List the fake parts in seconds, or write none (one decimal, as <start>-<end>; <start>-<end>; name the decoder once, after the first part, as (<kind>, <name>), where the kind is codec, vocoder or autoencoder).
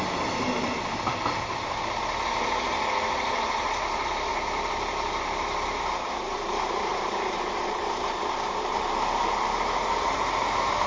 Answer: 6.9-10.9 (vocoder, BigVGAN v2)